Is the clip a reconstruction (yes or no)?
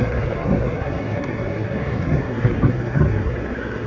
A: yes